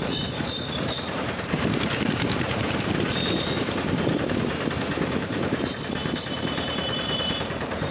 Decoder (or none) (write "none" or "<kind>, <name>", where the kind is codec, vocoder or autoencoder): vocoder, BigVGAN v2